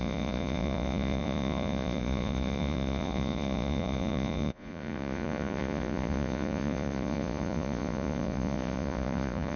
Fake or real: fake